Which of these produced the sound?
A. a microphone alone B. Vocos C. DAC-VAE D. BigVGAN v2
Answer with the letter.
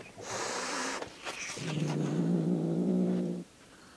D